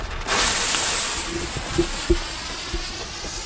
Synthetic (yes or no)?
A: no